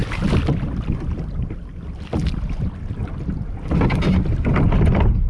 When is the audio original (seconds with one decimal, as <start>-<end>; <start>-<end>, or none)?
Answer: 0.0-5.3